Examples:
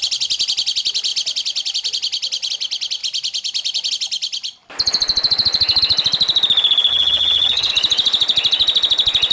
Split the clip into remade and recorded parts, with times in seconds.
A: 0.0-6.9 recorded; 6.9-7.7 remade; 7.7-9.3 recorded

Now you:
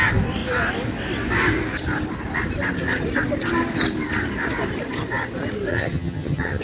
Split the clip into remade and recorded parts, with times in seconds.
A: 0.0-5.7 recorded; 5.7-6.6 remade

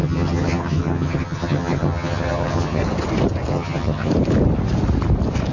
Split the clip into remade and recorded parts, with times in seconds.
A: 0.0-2.8 remade; 2.8-3.5 recorded; 3.5-4.1 remade; 4.1-5.5 recorded

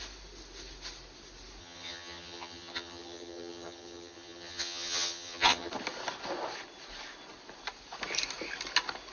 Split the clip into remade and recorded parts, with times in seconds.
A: 0.0-1.6 recorded; 1.6-5.7 remade; 5.7-9.1 recorded